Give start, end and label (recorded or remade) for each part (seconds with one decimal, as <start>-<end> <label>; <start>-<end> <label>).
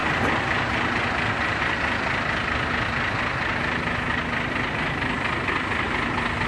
0.0-6.5 recorded